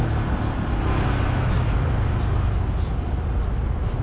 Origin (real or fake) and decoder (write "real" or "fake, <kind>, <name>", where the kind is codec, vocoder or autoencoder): real